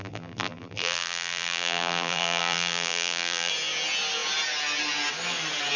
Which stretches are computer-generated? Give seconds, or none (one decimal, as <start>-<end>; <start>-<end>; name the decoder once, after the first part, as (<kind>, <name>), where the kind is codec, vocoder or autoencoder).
0.0-3.5 (vocoder, BigVGAN v2)